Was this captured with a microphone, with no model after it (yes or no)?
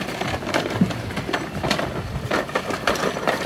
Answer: no